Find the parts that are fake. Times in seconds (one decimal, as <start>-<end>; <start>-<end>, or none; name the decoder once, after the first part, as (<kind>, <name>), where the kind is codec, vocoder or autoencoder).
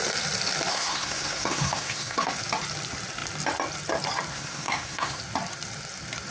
0.7-2.3 (codec, SNAC); 4.3-5.2